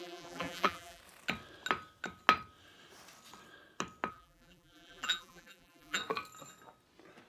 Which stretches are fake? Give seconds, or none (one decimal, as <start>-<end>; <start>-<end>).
0.0-1.0; 4.1-6.0